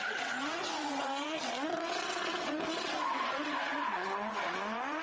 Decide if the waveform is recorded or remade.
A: remade